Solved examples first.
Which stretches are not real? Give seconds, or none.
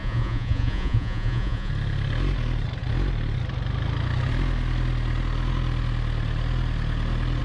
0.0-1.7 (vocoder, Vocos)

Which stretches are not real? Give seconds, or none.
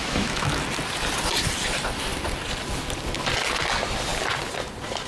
0.0-0.6 (autoencoder, DAC-VAE)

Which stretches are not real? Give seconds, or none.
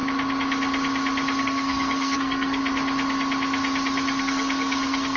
1.4-2.6 (codec, SNAC); 4.2-5.2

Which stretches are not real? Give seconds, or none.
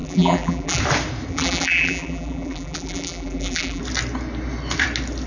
0.0-0.8 (vocoder, BigVGAN v2); 1.3-3.8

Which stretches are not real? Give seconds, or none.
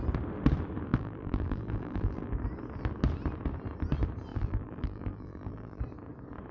0.9-2.3 (vocoder, BigVGAN v2); 4.3-5.8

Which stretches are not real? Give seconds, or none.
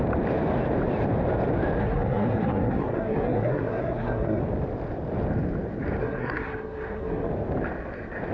1.8-4.4 (codec, SNAC); 6.0-7.3